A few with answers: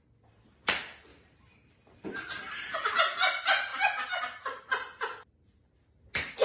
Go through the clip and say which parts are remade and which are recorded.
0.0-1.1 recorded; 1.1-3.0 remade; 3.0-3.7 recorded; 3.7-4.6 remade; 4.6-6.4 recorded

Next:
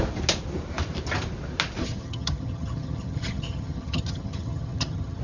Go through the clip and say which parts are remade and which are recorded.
0.0-1.8 recorded; 1.8-5.2 remade

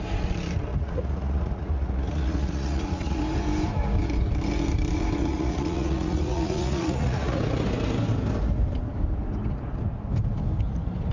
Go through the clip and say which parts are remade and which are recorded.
0.0-0.7 recorded; 0.7-3.2 remade; 3.2-5.2 recorded; 5.2-7.4 remade; 7.4-11.1 recorded

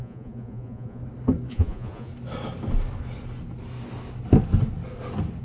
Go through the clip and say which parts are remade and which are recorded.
0.0-1.0 remade; 1.0-1.5 recorded; 1.5-2.1 remade; 2.1-5.4 recorded

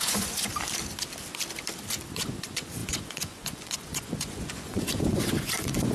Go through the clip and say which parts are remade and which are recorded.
0.0-0.5 remade; 0.5-2.1 recorded; 2.1-5.9 remade